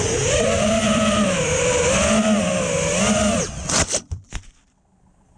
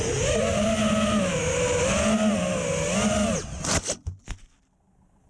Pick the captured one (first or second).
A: second